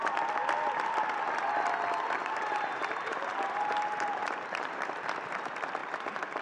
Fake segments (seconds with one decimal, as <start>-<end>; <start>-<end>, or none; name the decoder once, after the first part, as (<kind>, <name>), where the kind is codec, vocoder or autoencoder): 2.2-5.3 (vocoder, BigVGAN v2); 5.8-6.4